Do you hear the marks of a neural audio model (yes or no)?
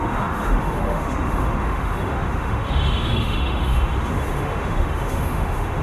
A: yes